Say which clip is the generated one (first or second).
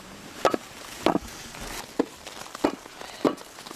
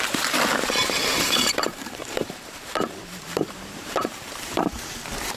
second